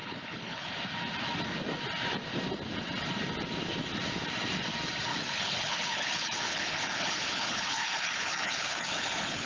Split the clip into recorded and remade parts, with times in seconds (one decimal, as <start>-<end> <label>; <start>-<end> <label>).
0.0-0.7 remade; 0.7-5.1 recorded; 5.1-9.5 remade